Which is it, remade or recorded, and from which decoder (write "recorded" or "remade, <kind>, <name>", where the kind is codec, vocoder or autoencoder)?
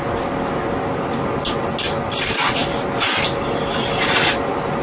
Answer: recorded